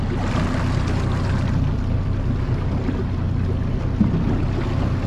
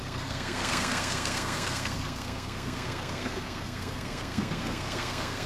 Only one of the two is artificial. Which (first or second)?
second